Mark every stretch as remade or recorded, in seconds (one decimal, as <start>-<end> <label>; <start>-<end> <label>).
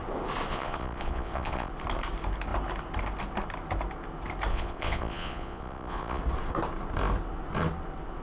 0.0-0.5 recorded; 0.5-1.7 remade; 1.7-4.5 recorded; 4.5-6.2 remade; 6.2-8.2 recorded